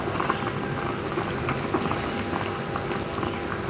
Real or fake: real